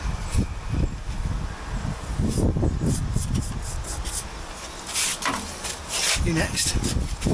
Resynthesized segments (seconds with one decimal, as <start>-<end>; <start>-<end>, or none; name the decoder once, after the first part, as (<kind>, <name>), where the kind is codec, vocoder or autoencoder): none